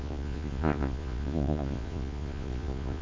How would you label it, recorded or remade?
remade